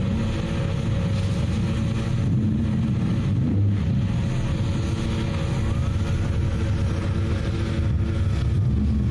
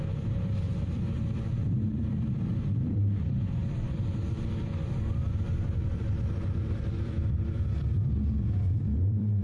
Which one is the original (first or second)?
first